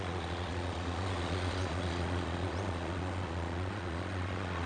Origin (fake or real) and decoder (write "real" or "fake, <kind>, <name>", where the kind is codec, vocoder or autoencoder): fake, vocoder, Vocos